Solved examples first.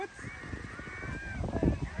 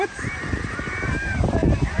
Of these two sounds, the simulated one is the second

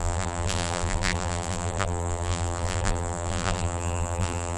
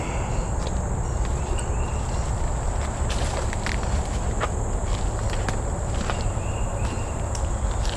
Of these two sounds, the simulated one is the first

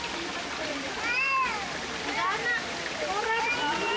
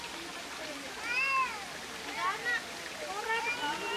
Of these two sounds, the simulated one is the first